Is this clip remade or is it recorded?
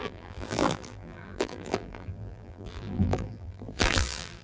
remade